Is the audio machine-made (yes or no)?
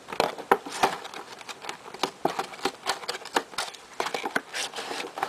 no